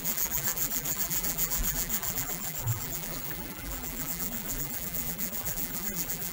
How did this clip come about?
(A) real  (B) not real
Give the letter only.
B